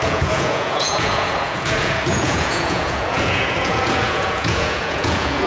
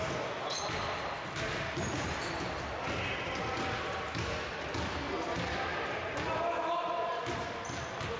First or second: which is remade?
first